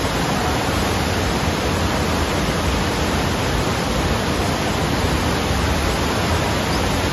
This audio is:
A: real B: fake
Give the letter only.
A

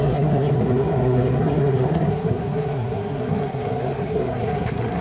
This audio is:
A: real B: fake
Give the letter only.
B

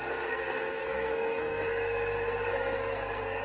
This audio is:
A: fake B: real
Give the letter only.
A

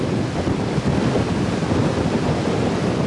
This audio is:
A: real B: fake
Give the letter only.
A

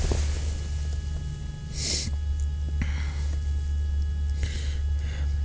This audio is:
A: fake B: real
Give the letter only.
B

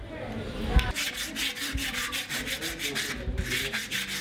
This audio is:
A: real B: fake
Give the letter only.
A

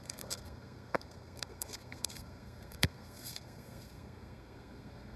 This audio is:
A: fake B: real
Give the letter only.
A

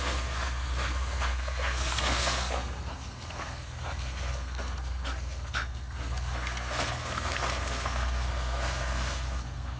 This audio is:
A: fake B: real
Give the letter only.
A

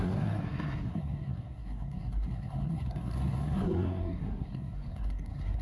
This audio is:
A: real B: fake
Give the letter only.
B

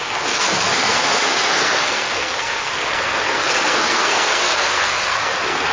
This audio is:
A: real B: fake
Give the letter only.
B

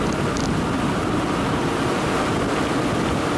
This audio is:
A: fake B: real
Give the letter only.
B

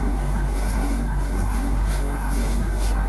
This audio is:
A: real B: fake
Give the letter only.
B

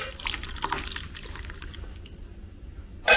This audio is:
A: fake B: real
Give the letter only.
B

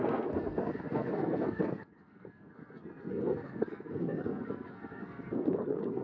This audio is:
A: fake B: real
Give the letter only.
A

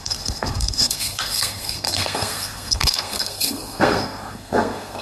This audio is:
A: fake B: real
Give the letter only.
A